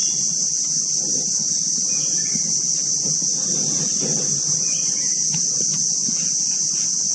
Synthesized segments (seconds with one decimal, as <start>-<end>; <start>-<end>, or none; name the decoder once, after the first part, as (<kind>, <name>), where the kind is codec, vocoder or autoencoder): none